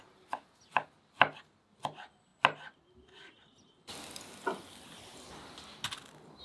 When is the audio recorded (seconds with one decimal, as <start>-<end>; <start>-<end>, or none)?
0.0-6.4